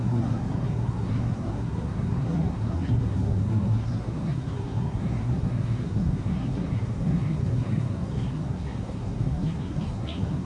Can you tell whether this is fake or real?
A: fake